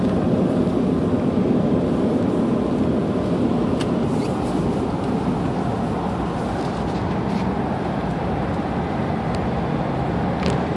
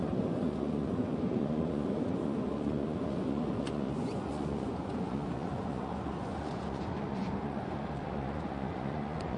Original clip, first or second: first